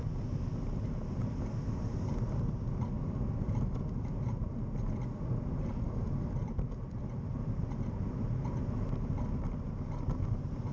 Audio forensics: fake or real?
real